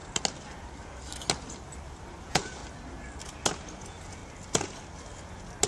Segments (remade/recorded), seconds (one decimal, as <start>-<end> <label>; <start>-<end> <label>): 0.0-2.2 recorded; 2.2-2.6 remade; 2.6-3.8 recorded; 3.8-4.2 remade; 4.2-5.7 recorded